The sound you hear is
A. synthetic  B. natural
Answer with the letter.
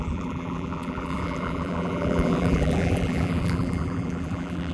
A